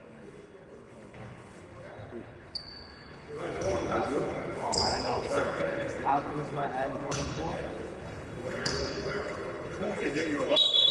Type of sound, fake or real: fake